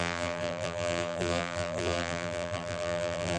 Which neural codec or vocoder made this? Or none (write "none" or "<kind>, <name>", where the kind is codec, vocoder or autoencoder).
vocoder, BigVGAN v2